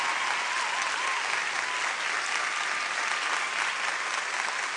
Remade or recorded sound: recorded